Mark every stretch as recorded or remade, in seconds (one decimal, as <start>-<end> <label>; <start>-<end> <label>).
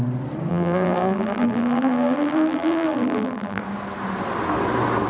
0.0-0.5 recorded; 0.5-3.6 remade; 3.6-5.1 recorded